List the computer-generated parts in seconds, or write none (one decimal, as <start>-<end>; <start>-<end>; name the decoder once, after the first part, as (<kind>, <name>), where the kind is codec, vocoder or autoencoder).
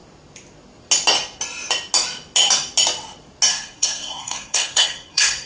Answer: 3.5-5.5 (codec, SNAC)